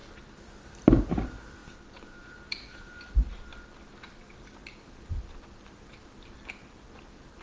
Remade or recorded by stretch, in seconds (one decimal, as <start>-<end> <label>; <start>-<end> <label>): 0.0-7.4 remade